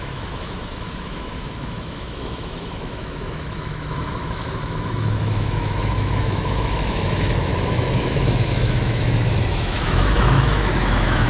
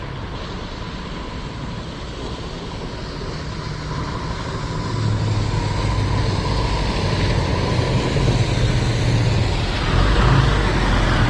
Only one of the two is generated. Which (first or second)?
first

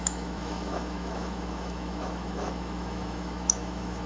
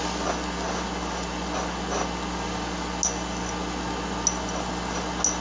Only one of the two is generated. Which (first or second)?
first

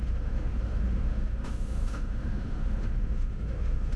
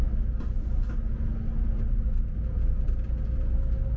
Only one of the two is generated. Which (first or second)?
first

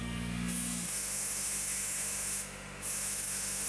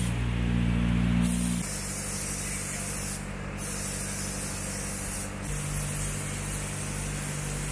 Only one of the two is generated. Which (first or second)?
first